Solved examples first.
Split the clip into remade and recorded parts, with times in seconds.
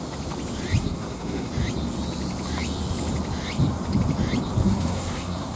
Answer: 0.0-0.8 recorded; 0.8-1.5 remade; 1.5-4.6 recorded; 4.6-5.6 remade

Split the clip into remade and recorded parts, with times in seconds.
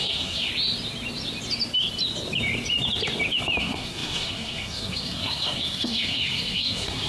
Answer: 0.0-0.5 remade; 0.5-3.6 recorded; 3.6-7.1 remade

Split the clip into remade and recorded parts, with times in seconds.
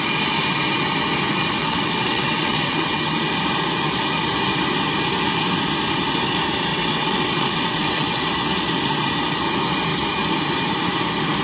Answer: 0.0-1.6 recorded; 1.6-3.3 remade; 3.3-6.7 recorded; 6.7-8.3 remade; 8.3-11.4 recorded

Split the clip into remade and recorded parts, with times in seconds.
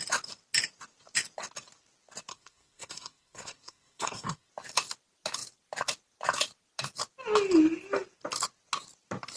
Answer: 0.0-2.3 recorded; 2.3-4.5 remade; 4.5-9.4 recorded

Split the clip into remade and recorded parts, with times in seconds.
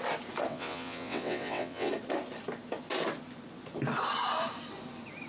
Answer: 0.0-0.5 recorded; 0.5-1.9 remade; 1.9-5.3 recorded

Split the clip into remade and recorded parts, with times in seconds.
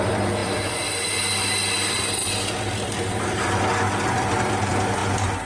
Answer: 0.0-5.5 remade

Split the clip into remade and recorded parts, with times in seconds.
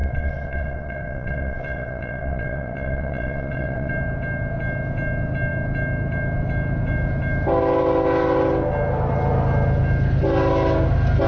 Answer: 0.0-3.9 remade; 3.9-11.3 recorded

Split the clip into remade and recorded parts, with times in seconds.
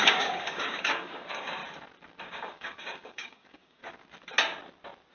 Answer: 0.0-1.6 remade; 1.6-2.2 recorded; 2.2-3.8 remade; 3.8-5.1 recorded